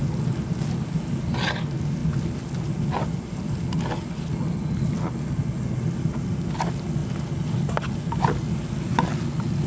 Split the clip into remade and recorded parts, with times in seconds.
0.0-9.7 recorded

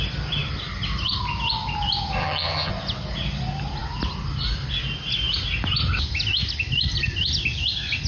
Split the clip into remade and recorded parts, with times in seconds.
0.0-2.2 recorded; 2.2-2.7 remade; 2.7-8.1 recorded

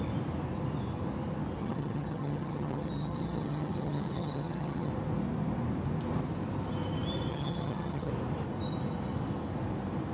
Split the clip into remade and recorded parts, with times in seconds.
0.0-1.6 recorded; 1.6-4.9 remade; 4.9-7.3 recorded; 7.3-8.1 remade; 8.1-10.1 recorded

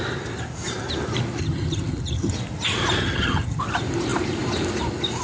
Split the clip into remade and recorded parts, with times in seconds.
0.0-1.4 recorded; 1.4-2.3 remade; 2.3-3.0 recorded; 3.0-3.6 remade; 3.6-5.2 recorded

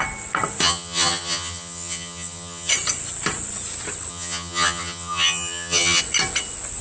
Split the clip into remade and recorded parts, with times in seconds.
0.0-0.6 recorded; 0.6-2.7 remade; 2.7-4.1 recorded; 4.1-6.0 remade; 6.0-6.8 recorded

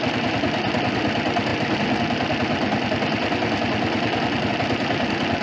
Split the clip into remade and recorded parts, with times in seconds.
0.0-5.4 recorded

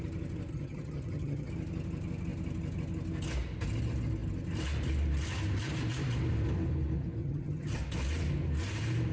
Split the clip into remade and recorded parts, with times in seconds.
0.0-0.5 recorded; 0.5-1.5 remade; 1.5-7.2 recorded; 7.2-7.8 remade; 7.8-9.1 recorded